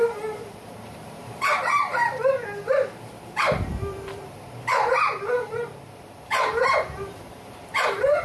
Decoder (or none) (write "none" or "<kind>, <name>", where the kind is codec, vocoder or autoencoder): vocoder, BigVGAN v2